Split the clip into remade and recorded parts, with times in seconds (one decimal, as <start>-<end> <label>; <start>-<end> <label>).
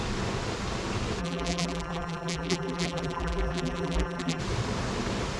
0.0-1.2 recorded; 1.2-4.4 remade; 4.4-5.4 recorded